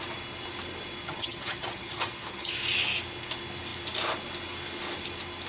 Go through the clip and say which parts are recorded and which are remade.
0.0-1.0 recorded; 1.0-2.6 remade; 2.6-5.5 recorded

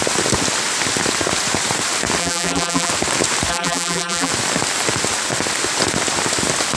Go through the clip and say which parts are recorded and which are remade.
0.0-2.2 recorded; 2.2-2.9 remade; 2.9-3.5 recorded; 3.5-4.3 remade; 4.3-6.8 recorded

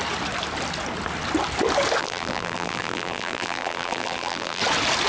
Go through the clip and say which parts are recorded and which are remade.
0.0-2.0 recorded; 2.0-4.6 remade; 4.6-5.1 recorded

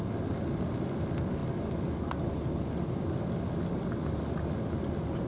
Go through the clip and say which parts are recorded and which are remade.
0.0-5.3 recorded

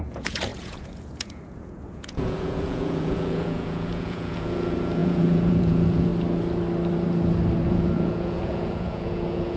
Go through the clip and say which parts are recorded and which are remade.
0.0-6.1 remade; 6.1-7.7 recorded; 7.7-9.6 remade

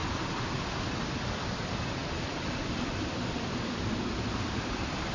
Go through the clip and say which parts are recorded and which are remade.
0.0-5.1 remade